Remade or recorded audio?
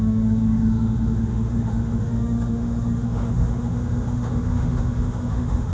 remade